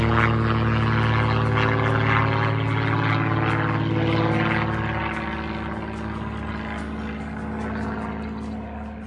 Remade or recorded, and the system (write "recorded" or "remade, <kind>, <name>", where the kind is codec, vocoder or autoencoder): recorded